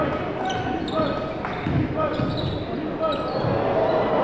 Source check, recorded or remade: recorded